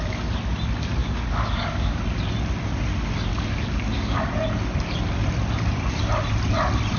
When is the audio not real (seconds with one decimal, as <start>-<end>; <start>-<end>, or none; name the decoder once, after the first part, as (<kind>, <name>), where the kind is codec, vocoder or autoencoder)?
1.0-2.0 (codec, DAC); 3.3-4.2